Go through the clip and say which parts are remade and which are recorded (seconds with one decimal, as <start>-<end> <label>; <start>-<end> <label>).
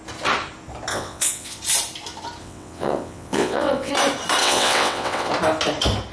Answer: 0.0-0.9 recorded; 0.9-1.6 remade; 1.6-2.4 recorded; 2.4-3.9 remade; 3.9-4.4 recorded; 4.4-5.3 remade; 5.3-6.1 recorded